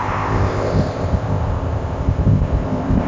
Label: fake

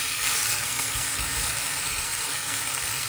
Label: fake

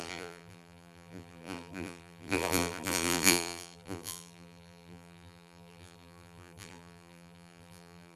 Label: fake